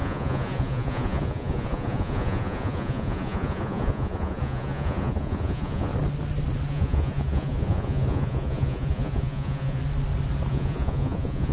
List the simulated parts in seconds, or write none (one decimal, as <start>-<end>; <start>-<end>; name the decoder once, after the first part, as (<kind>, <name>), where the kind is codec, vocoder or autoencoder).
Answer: 0.0-5.9 (vocoder, Vocos); 6.7-9.8; 10.5-11.5